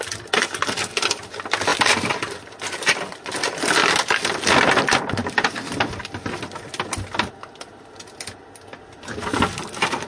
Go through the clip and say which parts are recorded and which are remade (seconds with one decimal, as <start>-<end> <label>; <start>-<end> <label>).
0.0-3.8 recorded; 3.8-4.3 remade; 4.3-5.2 recorded; 5.2-5.8 remade; 5.8-10.1 recorded